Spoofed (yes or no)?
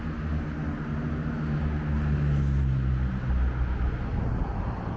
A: no